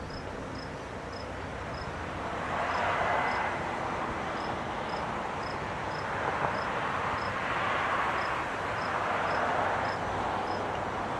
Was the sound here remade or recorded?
recorded